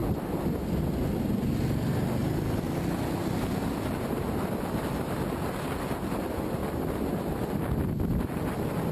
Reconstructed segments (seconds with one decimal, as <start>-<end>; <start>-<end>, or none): none